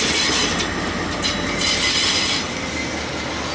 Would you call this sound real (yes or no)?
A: yes